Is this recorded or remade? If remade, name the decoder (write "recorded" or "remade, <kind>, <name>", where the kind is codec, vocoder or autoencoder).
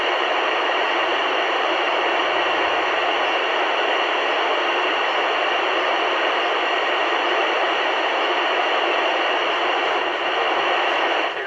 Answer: remade, vocoder, BigVGAN v2